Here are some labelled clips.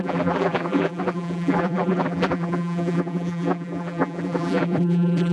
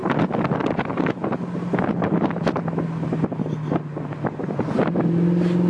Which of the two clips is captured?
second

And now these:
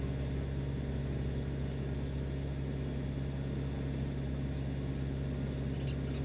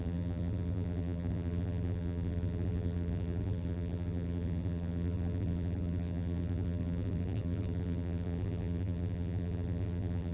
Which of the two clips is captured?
first